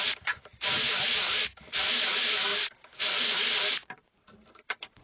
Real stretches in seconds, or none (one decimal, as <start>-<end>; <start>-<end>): none